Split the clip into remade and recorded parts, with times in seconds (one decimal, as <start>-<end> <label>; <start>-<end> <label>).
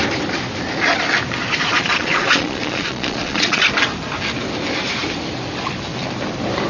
0.0-1.6 recorded; 1.6-3.6 remade; 3.6-6.7 recorded